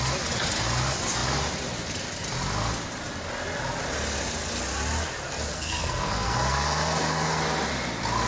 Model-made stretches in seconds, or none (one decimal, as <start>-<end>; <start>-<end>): 5.5-7.4